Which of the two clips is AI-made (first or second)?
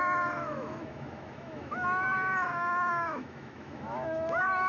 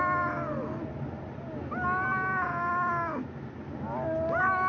first